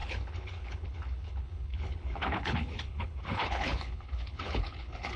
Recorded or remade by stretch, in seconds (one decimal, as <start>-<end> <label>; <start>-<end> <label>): 0.0-5.2 remade